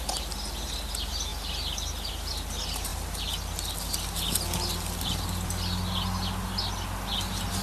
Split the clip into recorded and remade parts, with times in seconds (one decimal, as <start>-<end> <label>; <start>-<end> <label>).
0.0-7.6 recorded

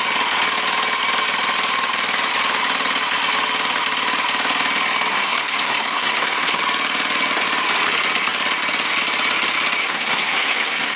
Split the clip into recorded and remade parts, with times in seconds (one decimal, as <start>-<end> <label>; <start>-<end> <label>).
0.0-5.1 recorded; 5.1-6.6 remade; 6.6-9.8 recorded; 9.8-11.0 remade

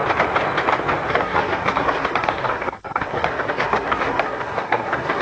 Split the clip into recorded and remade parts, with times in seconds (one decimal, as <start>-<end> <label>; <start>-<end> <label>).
0.0-1.1 recorded; 1.1-5.2 remade

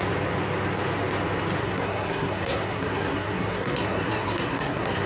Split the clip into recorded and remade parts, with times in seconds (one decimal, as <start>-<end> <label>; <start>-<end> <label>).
0.0-1.6 recorded; 1.6-5.1 remade

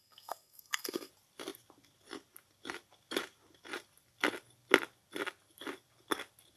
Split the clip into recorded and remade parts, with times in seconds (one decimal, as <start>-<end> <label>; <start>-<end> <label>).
0.0-1.1 remade; 1.1-6.6 recorded

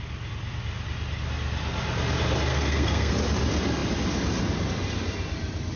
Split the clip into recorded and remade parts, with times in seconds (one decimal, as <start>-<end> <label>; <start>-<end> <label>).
0.0-2.5 recorded; 2.5-3.1 remade; 3.1-5.8 recorded

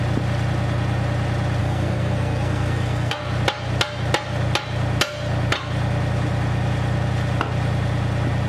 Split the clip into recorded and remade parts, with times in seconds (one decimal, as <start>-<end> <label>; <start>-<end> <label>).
0.0-1.6 recorded; 1.6-3.2 remade; 3.2-8.5 recorded